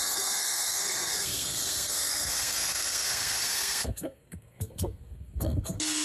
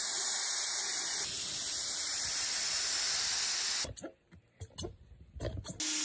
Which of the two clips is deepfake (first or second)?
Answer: first